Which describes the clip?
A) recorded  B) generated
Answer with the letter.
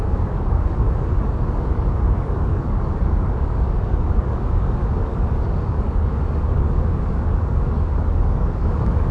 B